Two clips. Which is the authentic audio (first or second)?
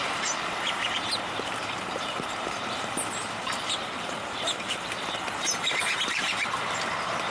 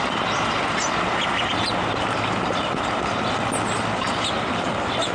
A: second